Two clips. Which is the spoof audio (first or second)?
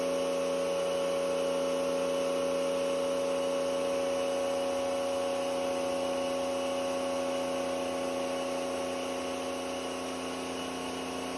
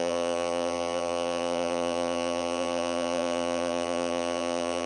second